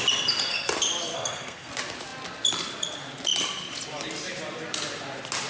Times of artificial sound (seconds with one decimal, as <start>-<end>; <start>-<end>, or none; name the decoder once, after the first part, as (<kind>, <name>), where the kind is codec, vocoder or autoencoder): 1.1-1.7 (codec, SNAC)